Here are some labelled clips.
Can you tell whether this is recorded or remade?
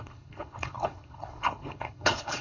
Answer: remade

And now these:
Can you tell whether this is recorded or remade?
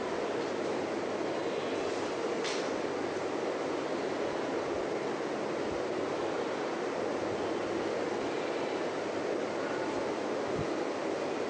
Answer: recorded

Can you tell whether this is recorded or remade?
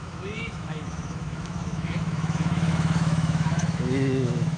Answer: remade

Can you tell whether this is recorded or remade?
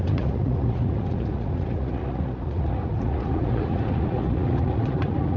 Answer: remade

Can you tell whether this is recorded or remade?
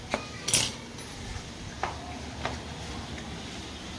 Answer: recorded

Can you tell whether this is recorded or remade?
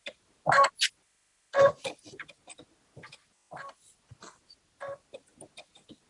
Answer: recorded